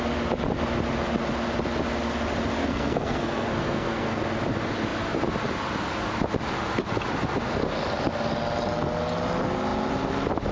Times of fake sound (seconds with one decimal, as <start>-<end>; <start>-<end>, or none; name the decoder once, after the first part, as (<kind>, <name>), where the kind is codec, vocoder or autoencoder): 2.6-4.2 (codec, SNAC)